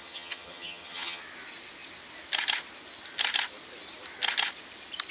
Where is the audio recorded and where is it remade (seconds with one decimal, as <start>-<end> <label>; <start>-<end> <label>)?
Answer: 0.0-1.2 remade; 1.2-5.1 recorded